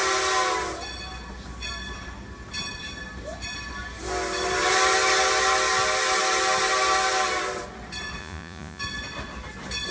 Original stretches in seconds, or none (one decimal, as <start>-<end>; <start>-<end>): 0.0-8.2; 8.8-9.9